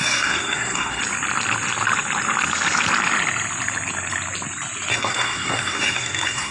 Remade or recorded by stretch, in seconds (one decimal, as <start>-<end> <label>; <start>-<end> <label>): 0.0-1.0 remade; 1.0-4.9 recorded; 4.9-6.5 remade